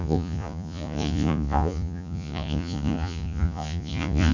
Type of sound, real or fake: fake